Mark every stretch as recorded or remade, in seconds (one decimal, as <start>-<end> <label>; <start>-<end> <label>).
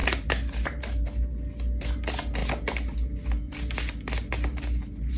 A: 0.0-5.2 recorded